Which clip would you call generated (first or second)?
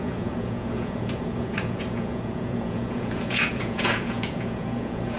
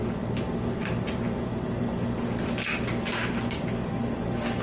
first